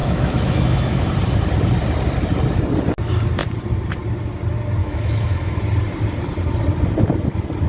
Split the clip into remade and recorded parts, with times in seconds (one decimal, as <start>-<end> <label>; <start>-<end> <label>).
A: 0.0-1.1 remade; 1.1-4.8 recorded; 4.8-5.6 remade; 5.6-7.7 recorded

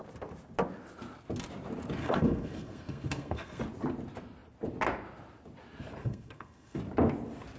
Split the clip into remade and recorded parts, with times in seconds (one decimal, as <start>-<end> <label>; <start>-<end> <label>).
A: 0.0-2.0 recorded; 2.0-3.6 remade; 3.6-6.0 recorded; 6.0-6.8 remade; 6.8-7.6 recorded

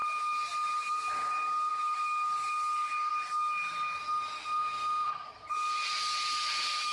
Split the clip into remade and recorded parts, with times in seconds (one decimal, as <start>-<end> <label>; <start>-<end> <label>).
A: 0.0-4.0 recorded; 4.0-5.1 remade; 5.1-6.9 recorded